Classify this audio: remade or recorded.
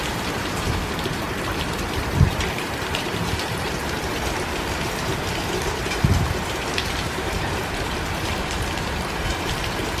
remade